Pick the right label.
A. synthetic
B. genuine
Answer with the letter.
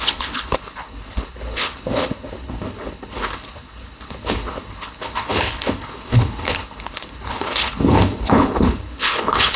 A